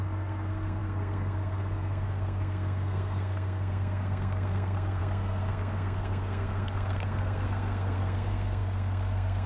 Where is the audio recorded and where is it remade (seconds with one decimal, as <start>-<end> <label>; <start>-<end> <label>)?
0.0-9.5 remade